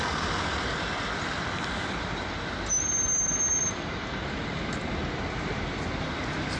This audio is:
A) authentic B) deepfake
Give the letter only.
A